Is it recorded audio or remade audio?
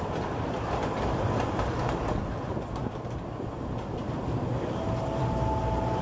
recorded